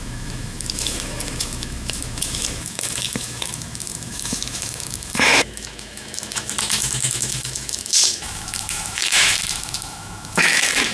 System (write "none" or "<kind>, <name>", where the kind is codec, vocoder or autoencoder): autoencoder, DAC-VAE